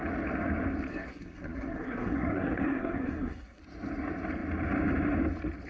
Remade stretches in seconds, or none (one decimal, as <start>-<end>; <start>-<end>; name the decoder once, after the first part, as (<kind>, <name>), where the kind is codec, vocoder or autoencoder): 0.9-3.6 (codec, SNAC)